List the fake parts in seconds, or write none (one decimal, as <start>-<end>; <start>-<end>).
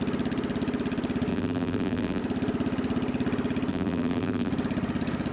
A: 1.3-2.2; 3.7-4.5